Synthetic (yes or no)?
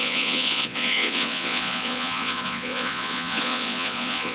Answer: yes